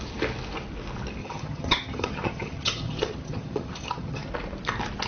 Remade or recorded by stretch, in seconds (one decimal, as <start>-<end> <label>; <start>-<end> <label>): 0.0-1.2 recorded; 1.2-4.3 remade; 4.3-5.1 recorded